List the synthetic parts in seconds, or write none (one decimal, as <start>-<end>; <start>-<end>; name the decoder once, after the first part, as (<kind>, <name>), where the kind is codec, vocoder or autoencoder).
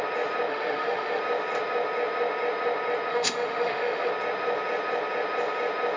0.5-1.2 (autoencoder, DAC-VAE); 3.1-4.1